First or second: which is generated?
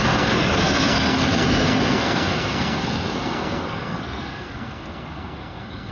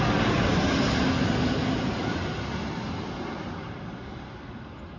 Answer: first